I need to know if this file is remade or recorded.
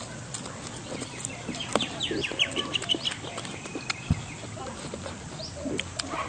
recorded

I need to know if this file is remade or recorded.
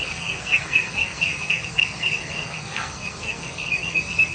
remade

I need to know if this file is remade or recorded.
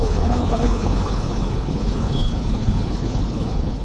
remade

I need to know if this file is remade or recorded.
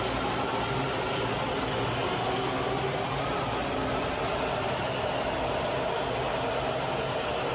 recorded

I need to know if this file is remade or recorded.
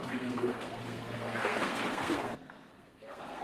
remade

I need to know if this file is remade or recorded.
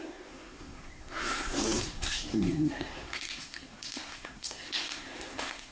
remade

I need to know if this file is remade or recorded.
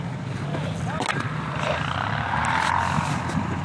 recorded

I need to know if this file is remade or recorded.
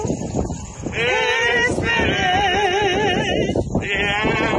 recorded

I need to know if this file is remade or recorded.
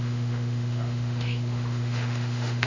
remade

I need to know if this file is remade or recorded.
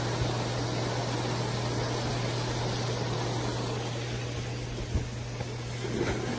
recorded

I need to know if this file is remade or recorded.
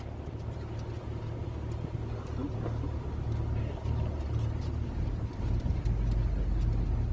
recorded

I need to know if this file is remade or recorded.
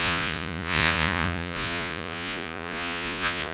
remade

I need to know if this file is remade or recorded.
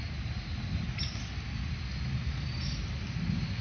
recorded